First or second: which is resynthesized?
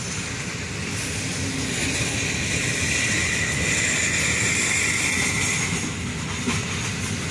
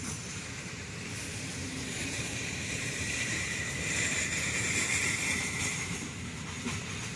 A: second